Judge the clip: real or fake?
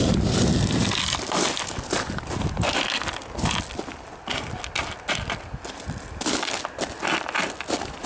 real